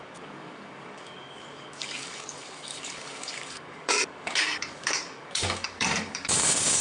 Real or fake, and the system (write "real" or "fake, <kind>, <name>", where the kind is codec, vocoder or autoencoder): fake, codec, DAC